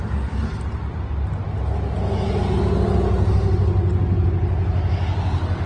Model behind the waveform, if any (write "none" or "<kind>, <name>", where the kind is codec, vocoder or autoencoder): none